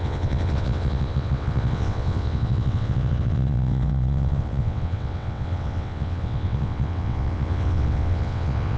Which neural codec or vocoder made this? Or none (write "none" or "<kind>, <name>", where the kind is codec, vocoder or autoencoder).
vocoder, WaveNeXt